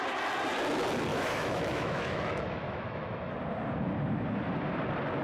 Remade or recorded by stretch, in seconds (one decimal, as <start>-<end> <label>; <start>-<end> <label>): 0.0-1.1 recorded; 1.1-3.3 remade; 3.3-5.2 recorded